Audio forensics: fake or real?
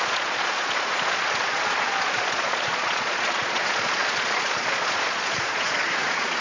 fake